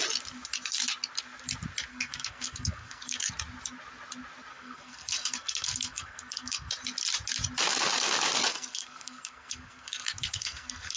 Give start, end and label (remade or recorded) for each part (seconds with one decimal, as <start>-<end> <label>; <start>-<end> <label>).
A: 0.0-1.9 recorded; 1.9-3.3 remade; 3.3-4.5 recorded; 4.5-6.7 remade; 6.7-8.5 recorded; 8.5-11.0 remade